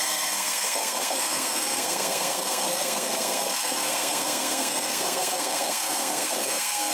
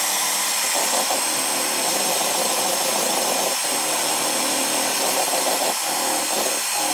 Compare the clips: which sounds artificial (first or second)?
first